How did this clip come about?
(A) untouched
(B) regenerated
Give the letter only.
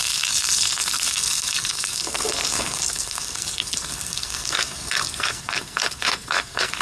B